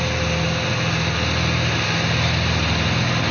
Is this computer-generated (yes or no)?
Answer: no